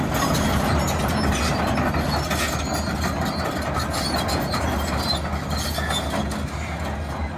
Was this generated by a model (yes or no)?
no